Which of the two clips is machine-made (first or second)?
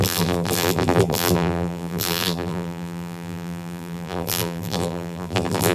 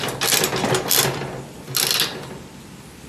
first